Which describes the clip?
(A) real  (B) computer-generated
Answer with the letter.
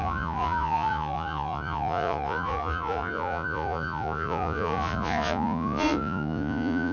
B